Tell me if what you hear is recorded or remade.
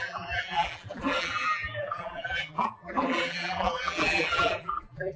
remade